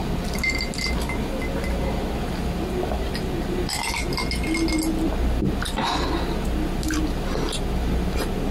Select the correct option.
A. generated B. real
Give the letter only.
B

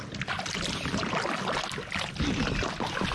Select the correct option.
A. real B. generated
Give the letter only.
A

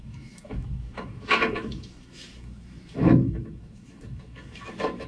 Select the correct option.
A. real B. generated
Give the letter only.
B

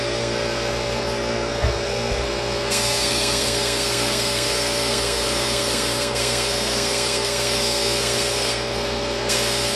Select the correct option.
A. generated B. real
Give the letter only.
A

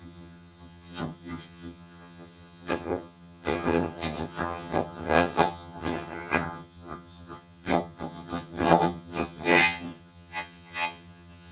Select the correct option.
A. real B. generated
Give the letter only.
B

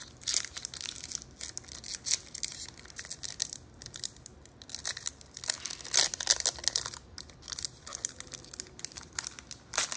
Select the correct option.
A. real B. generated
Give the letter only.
A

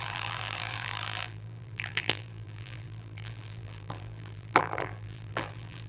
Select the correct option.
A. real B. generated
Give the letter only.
B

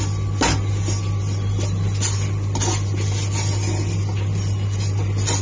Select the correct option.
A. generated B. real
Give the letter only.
B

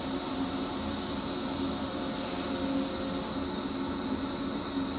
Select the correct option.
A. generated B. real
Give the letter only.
B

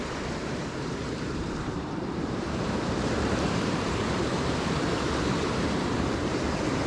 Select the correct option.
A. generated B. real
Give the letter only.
A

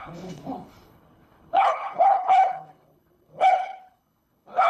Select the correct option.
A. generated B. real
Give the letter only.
A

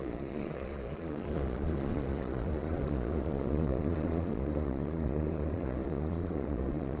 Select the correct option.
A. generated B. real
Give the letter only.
A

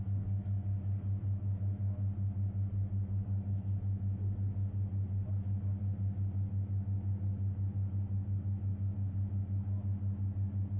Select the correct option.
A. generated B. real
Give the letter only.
B